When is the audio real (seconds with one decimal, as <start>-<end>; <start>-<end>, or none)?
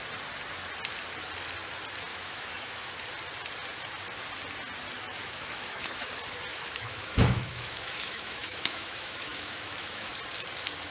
0.0-2.1; 3.0-5.1; 6.1-6.5; 10.1-10.9